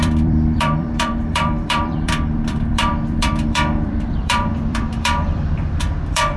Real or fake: fake